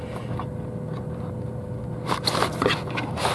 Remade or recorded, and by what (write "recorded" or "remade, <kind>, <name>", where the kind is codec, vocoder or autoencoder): recorded